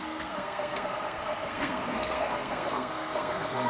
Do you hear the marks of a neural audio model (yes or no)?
yes